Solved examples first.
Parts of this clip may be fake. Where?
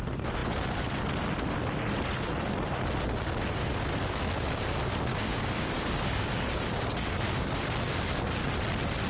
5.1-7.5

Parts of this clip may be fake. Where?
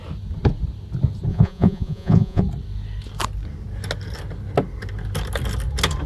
1.3-2.4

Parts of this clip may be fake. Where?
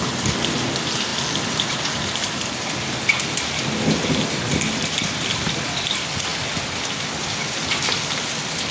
none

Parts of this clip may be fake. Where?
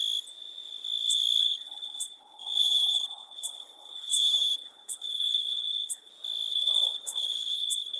1.4-6.1; 6.5-8.0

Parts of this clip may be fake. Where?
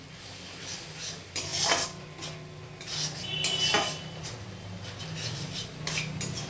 none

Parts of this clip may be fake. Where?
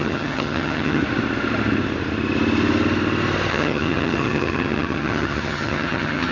0.0-1.0; 3.5-6.3